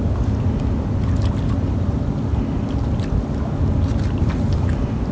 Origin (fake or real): real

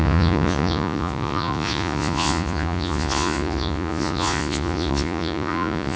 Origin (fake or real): fake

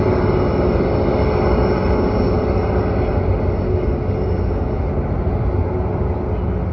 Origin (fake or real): real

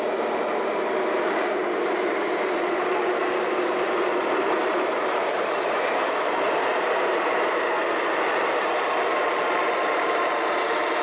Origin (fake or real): fake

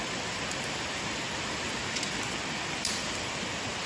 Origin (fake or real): real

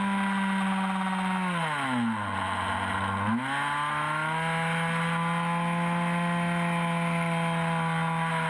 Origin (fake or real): real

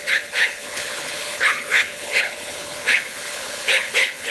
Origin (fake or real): fake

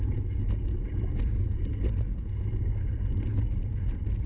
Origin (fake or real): real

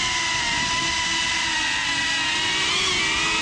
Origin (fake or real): real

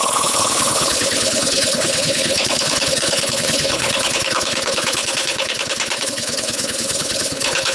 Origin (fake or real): fake